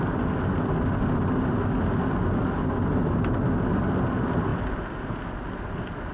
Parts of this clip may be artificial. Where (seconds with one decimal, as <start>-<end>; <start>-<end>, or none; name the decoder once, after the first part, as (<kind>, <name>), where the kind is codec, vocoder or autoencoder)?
none